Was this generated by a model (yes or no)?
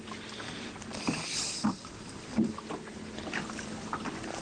no